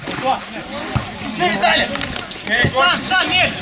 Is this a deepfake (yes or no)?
no